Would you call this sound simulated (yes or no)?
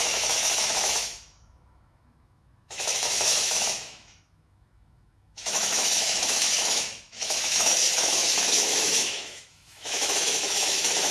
yes